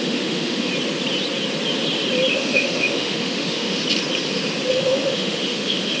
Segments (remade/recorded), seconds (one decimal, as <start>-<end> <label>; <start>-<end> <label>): 0.0-0.7 remade; 0.7-2.3 recorded; 2.3-3.8 remade; 3.8-4.7 recorded; 4.7-6.0 remade